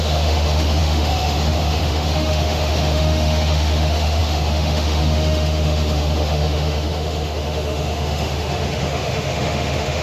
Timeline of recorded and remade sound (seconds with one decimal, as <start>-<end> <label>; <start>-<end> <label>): 0.0-10.0 remade